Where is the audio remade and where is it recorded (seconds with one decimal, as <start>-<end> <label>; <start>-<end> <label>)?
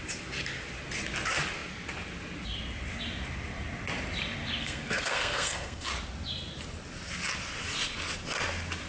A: 0.0-4.6 recorded; 4.6-5.9 remade; 5.9-8.9 recorded